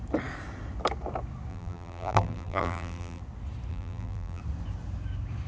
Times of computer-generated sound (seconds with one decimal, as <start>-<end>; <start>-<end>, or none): 1.5-3.2; 3.7-4.4